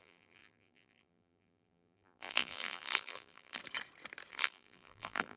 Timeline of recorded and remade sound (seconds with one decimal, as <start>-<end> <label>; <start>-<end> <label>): 0.0-3.6 remade; 3.6-4.3 recorded; 4.3-5.4 remade